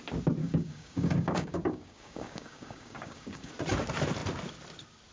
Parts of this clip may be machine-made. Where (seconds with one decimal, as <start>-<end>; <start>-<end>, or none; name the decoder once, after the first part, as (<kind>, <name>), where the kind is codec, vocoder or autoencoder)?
0.4-3.5 (codec, DAC)